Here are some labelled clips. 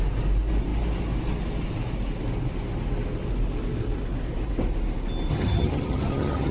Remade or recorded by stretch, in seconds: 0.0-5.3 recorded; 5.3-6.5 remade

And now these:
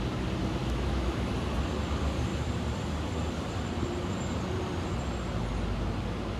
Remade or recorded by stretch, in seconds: 0.0-0.6 recorded; 0.6-1.3 remade; 1.3-6.4 recorded

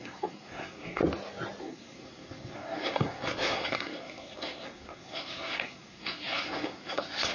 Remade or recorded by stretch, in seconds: 0.0-1.0 remade; 1.0-1.6 recorded; 1.6-7.3 remade

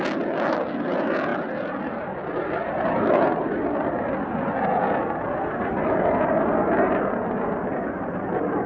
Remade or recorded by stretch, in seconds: 0.0-8.7 recorded